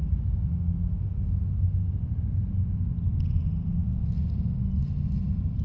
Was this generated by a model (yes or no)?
no